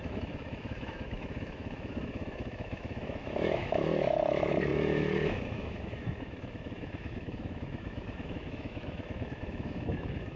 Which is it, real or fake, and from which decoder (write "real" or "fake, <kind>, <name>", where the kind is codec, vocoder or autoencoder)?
fake, autoencoder, DAC-VAE